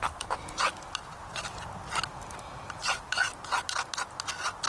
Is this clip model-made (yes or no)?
no